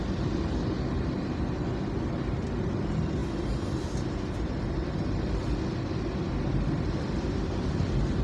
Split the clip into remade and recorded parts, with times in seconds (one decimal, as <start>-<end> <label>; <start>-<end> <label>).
0.0-8.2 recorded